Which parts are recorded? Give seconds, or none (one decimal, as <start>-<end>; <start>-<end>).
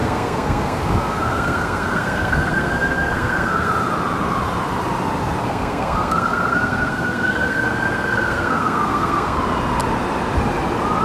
3.7-5.4; 9.4-11.0